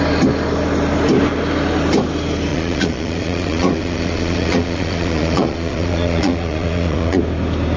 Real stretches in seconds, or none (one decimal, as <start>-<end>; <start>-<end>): 0.0-2.5; 7.2-7.8